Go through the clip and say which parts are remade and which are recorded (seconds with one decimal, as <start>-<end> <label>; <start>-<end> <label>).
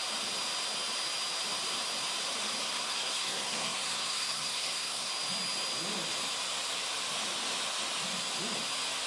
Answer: 0.0-2.6 recorded; 2.6-5.1 remade; 5.1-9.1 recorded